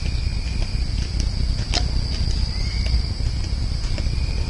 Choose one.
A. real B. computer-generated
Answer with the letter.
A